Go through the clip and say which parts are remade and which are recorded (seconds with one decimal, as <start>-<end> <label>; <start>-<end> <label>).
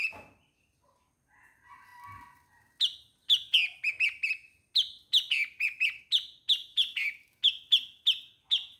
0.0-8.8 recorded